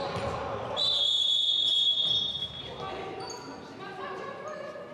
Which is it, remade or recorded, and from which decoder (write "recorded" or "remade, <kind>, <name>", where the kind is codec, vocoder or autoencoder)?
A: recorded